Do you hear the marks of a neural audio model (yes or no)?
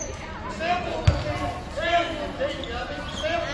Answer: no